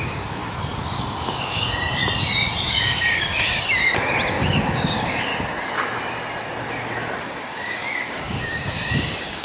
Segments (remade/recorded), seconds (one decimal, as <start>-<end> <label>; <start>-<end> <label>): 0.0-0.4 remade; 0.4-1.0 recorded; 1.0-2.0 remade; 2.0-2.7 recorded; 2.7-3.5 remade; 3.5-4.3 recorded; 4.3-5.3 remade; 5.3-7.2 recorded; 7.2-9.4 remade